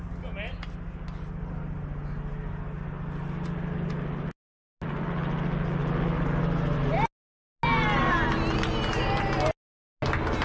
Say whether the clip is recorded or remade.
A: recorded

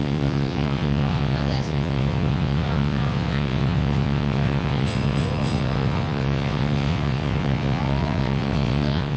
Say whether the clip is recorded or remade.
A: remade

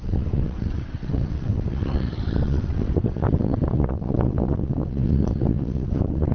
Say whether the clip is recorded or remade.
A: remade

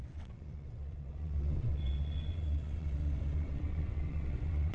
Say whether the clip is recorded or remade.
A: remade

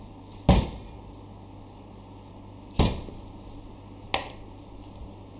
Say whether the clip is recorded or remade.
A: recorded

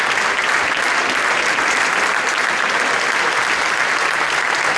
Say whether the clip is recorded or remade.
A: recorded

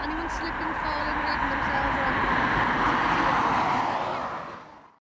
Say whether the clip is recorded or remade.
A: recorded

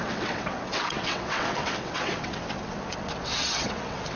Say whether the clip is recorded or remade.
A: remade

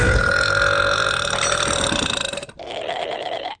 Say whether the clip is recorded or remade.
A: recorded